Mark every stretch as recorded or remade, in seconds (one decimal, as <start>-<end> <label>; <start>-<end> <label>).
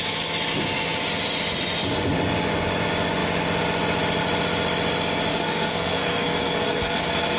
0.0-5.3 recorded; 5.3-7.4 remade